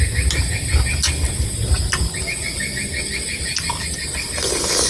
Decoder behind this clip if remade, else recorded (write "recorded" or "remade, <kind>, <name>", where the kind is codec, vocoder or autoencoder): recorded